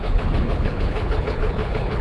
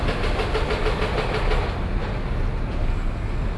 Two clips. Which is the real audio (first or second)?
second